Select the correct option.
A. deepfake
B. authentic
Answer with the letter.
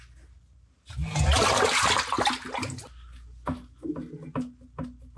B